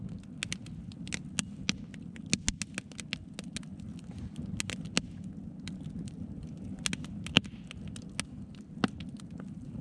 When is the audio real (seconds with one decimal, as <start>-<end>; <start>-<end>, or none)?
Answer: 0.0-9.8